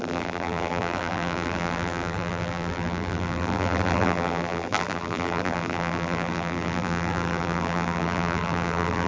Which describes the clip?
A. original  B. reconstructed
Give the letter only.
B